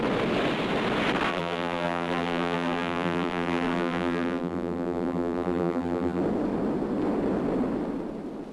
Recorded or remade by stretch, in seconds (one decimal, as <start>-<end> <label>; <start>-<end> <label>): 0.0-1.3 recorded; 1.3-6.2 remade; 6.2-8.5 recorded